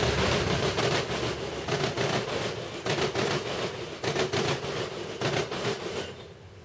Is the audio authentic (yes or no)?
yes